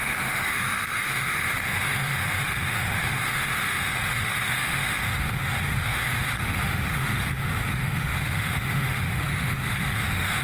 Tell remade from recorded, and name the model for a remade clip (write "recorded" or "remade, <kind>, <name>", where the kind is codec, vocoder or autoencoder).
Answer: remade, autoencoder, DAC-VAE